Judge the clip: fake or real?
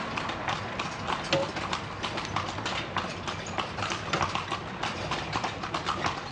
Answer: real